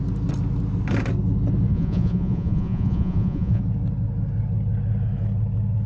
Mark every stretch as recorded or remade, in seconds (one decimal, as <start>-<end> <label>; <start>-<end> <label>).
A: 0.0-1.7 recorded; 1.7-3.6 remade; 3.6-5.9 recorded